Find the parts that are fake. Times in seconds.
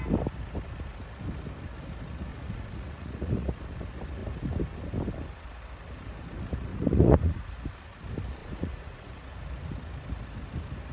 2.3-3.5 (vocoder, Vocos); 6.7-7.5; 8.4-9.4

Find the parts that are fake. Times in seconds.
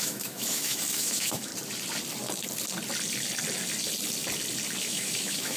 0.0-1.5 (autoencoder, DAC-VAE); 4.8-5.6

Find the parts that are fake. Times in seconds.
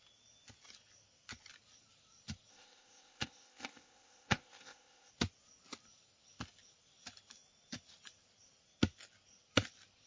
2.5-5.1 (codec, ZipCodec)